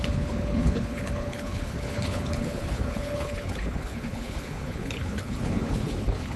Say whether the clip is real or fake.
fake